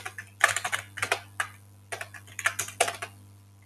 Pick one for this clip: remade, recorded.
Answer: recorded